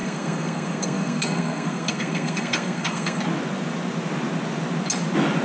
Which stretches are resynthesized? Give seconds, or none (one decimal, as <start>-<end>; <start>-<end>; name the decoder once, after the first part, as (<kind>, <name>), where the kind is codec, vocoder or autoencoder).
0.0-3.2 (codec, SNAC)